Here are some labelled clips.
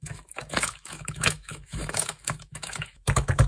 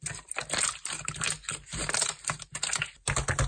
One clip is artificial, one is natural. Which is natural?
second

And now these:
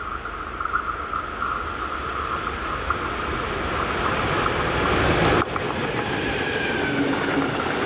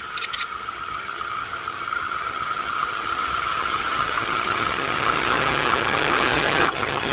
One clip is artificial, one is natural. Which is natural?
first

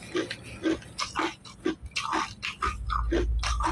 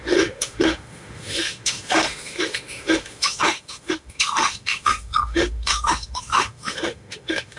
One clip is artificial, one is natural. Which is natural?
first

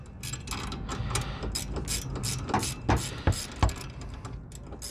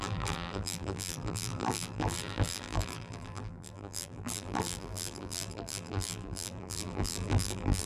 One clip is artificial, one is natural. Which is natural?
first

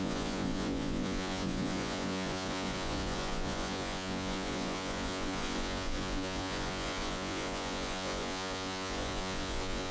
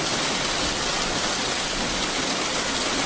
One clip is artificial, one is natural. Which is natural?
second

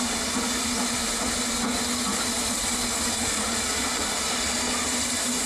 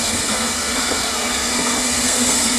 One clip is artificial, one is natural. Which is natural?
first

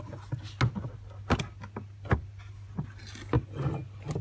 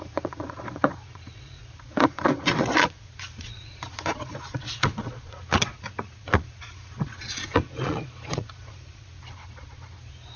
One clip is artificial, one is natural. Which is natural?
first